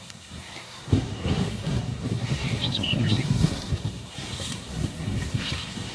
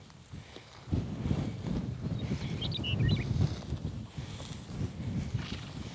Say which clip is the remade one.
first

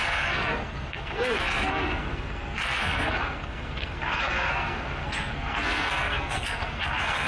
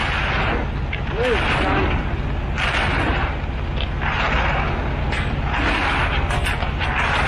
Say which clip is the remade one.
first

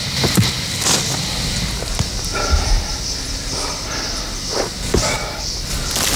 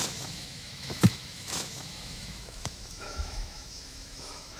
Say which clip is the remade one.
second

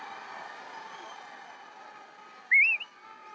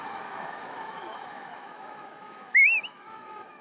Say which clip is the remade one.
second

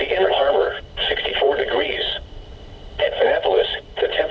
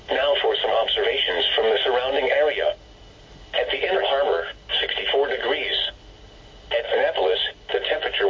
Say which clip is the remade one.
first